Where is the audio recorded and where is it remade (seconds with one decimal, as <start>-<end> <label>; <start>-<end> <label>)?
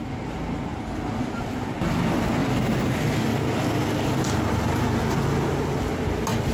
0.0-6.5 recorded